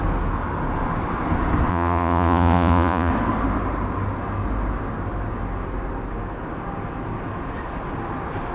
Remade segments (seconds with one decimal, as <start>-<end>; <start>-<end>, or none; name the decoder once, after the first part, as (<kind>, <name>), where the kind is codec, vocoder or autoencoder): 1.7-3.1 (vocoder, Vocos)